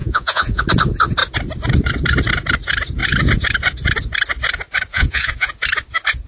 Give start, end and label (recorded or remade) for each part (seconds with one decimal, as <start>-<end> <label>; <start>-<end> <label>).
0.0-0.6 remade; 0.6-4.9 recorded; 4.9-5.5 remade; 5.5-6.3 recorded